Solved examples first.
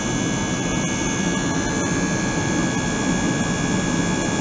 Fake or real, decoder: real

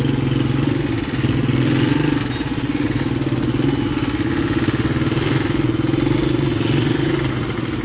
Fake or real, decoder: real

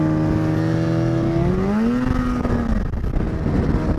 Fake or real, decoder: real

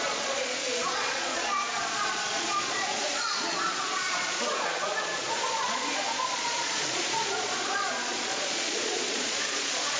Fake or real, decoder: fake, vocoder, Vocos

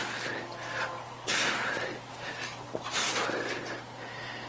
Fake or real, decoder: real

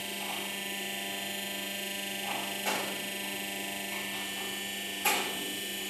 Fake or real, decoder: real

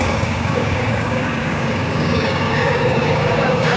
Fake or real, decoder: fake, codec, DAC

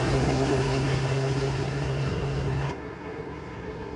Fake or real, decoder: fake, codec, SNAC